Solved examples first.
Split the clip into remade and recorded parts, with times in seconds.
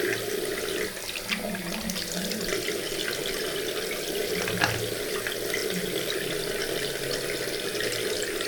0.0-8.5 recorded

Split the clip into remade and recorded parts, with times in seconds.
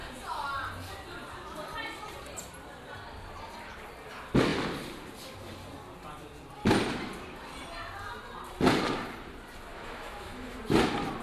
0.0-9.7 recorded; 9.7-10.6 remade; 10.6-11.2 recorded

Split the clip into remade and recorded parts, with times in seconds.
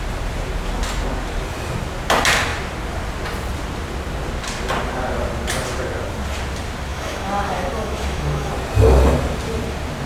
0.0-6.9 recorded; 6.9-8.5 remade; 8.5-10.1 recorded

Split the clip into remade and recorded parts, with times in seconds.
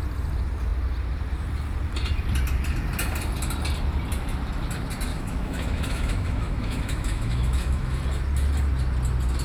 0.0-5.1 recorded; 5.1-8.0 remade; 8.0-9.4 recorded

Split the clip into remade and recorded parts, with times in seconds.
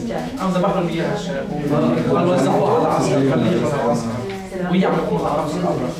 0.0-3.6 remade; 3.6-6.0 recorded